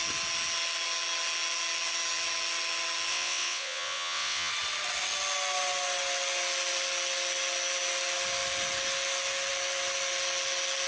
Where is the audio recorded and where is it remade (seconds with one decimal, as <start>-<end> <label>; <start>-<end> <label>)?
0.0-3.1 recorded; 3.1-4.5 remade; 4.5-10.9 recorded